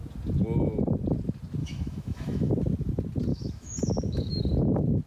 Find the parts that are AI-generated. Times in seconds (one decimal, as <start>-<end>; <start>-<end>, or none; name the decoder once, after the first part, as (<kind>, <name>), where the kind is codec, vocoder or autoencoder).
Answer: 1.6-2.5 (autoencoder, DAC-VAE); 3.3-4.4